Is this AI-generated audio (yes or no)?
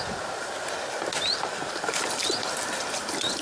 no